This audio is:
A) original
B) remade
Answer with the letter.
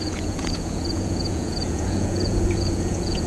B